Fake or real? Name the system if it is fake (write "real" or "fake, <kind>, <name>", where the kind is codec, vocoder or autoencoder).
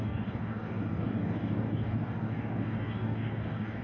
fake, codec, DAC